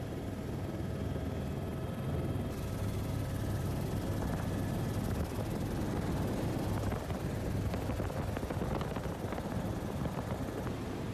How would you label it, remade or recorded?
recorded